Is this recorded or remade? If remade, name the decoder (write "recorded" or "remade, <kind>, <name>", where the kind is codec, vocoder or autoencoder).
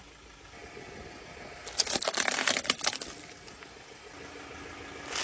recorded